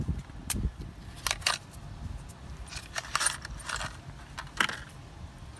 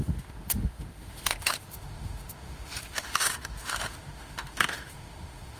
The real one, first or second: first